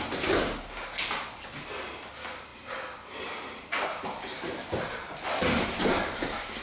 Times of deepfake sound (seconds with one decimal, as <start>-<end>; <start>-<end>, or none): 2.5-6.6